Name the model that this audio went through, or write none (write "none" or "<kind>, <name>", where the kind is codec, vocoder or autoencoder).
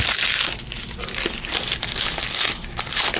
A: none